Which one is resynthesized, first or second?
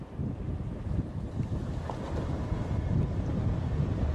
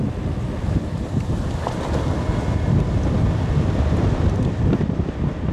first